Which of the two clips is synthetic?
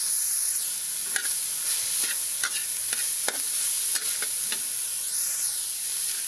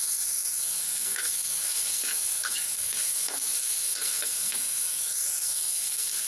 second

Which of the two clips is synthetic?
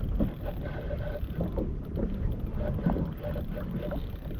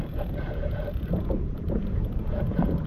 second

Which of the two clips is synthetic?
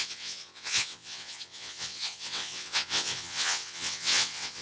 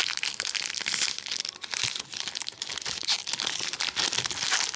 first